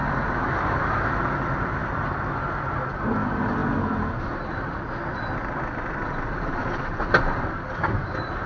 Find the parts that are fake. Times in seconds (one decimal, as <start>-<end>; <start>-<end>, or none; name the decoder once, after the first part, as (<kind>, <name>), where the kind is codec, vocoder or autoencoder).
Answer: none